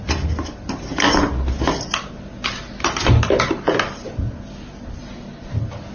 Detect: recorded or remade recorded